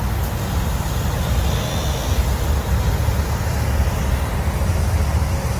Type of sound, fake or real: real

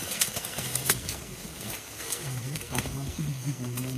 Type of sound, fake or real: fake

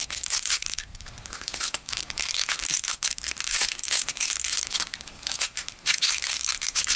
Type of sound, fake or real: fake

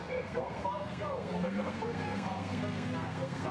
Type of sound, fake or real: fake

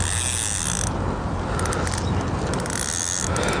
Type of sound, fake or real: real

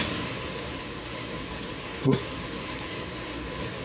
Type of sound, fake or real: fake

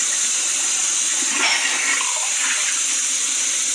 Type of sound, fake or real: real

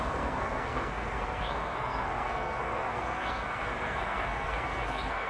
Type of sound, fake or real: fake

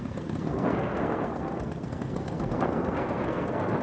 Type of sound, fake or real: fake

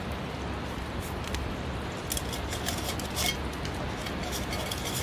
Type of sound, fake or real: real